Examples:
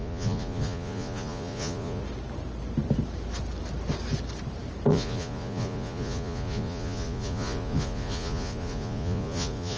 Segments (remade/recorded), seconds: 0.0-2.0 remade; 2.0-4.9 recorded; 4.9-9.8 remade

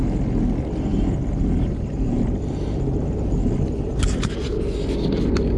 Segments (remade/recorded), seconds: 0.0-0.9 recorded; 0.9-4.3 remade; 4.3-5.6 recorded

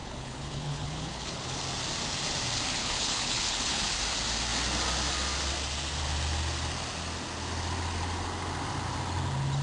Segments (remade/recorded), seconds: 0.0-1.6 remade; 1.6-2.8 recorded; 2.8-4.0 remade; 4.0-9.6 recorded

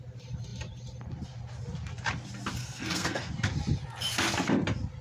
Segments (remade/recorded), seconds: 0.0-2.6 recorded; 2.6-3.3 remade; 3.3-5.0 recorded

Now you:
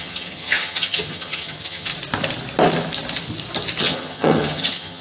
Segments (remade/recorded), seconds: 0.0-1.9 remade; 1.9-3.8 recorded; 3.8-5.0 remade